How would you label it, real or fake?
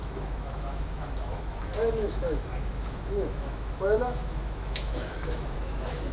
fake